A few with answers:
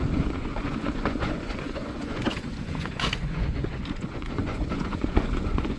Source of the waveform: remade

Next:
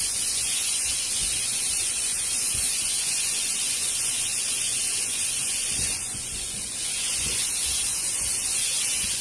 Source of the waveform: remade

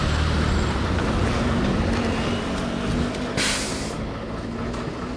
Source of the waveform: recorded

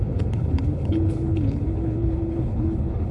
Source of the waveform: remade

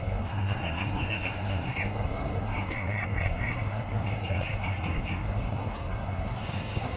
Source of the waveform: remade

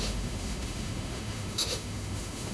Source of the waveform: remade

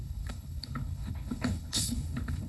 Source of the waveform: remade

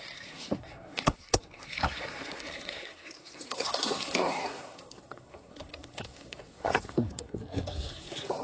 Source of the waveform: remade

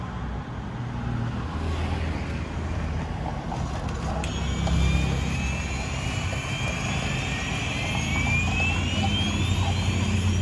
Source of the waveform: recorded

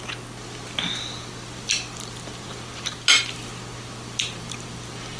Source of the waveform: recorded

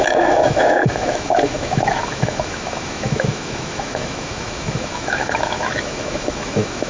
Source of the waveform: remade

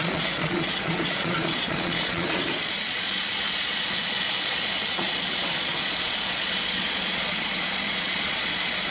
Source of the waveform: remade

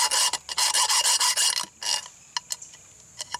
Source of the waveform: recorded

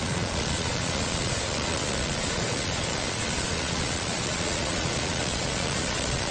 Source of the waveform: remade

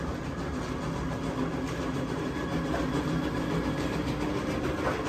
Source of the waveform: recorded